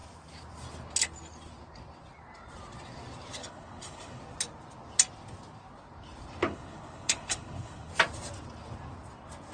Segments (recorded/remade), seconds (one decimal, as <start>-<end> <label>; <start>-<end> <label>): 0.0-3.4 recorded; 3.4-4.2 remade; 4.2-6.4 recorded; 6.4-7.9 remade; 7.9-9.5 recorded

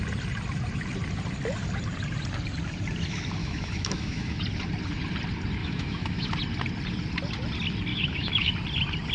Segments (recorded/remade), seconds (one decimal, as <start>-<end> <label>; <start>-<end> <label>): 0.0-3.4 recorded; 3.4-4.4 remade; 4.4-5.6 recorded; 5.6-6.3 remade; 6.3-7.9 recorded; 7.9-8.5 remade; 8.5-9.1 recorded